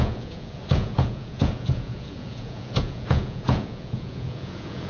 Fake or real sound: fake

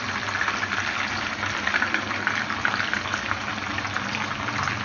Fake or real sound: real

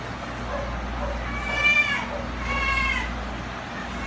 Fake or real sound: real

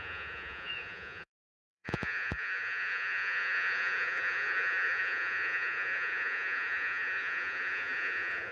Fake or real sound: fake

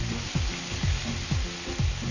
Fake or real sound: real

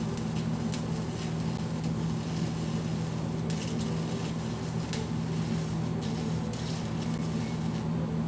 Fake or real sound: real